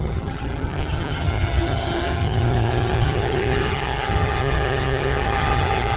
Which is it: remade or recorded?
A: remade